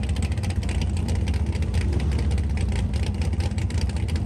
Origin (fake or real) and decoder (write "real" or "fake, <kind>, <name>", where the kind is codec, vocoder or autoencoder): real